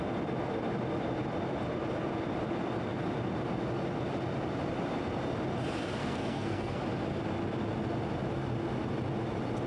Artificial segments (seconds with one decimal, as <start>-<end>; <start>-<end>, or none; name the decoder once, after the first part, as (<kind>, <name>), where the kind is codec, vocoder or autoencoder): 6.0-6.8 (codec, SNAC)